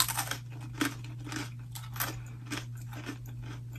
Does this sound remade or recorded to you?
recorded